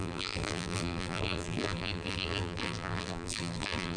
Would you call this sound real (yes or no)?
no